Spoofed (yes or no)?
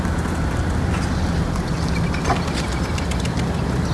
no